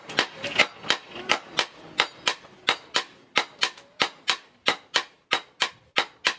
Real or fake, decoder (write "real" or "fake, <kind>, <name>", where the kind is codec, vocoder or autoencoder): real